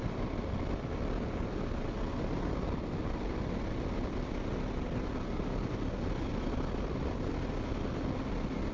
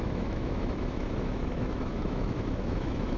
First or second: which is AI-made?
second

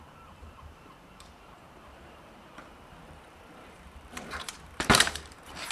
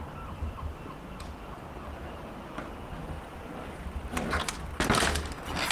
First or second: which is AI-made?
first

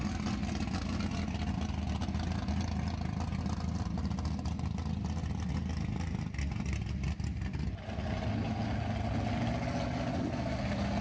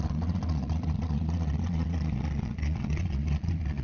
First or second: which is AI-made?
second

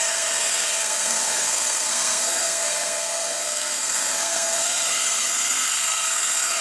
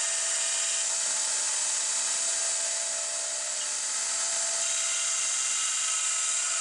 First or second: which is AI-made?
first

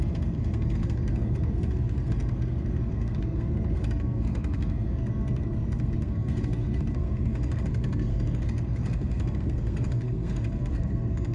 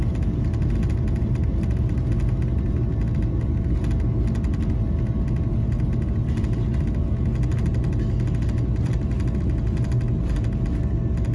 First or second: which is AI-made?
first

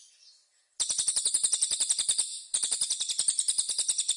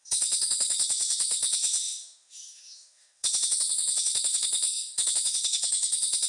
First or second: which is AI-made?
second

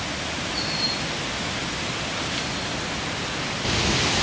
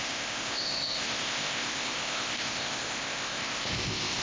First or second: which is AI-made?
second